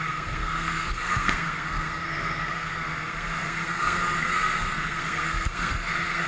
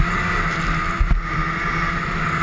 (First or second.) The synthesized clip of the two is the first